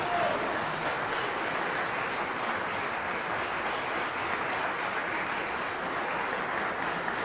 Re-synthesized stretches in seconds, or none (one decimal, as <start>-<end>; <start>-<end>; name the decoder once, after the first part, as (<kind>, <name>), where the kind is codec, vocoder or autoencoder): none